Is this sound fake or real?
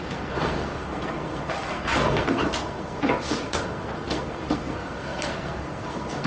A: fake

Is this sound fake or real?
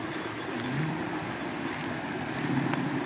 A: real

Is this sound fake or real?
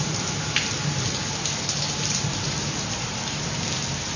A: fake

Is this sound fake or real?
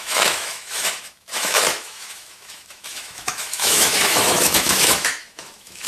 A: fake